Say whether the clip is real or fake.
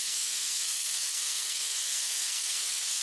fake